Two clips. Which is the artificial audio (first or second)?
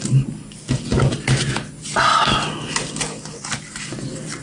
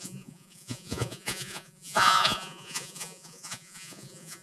second